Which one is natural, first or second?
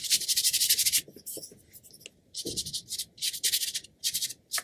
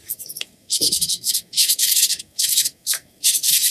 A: first